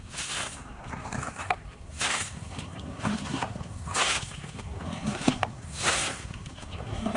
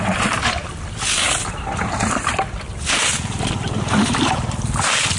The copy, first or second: first